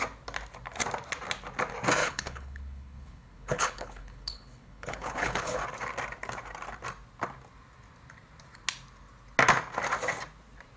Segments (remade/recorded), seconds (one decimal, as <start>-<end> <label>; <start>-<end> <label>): 0.0-2.0 recorded; 2.0-5.6 remade; 5.6-10.8 recorded